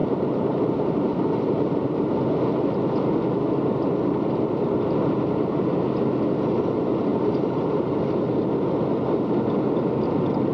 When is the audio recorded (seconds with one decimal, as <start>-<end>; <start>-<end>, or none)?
2.1-7.1; 7.9-10.5